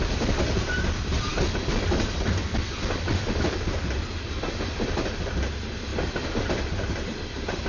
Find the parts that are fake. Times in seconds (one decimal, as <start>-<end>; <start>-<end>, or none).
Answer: none